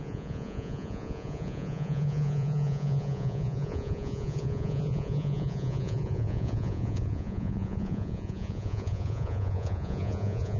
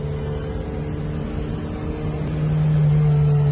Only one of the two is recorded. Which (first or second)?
second